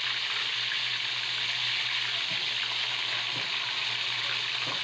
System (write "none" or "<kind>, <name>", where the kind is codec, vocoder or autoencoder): none